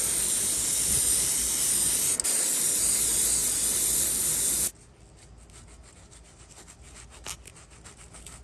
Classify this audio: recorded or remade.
recorded